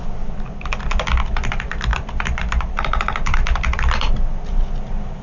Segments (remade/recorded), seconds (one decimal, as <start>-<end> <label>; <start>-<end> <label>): 0.0-1.9 recorded; 1.9-4.1 remade; 4.1-5.2 recorded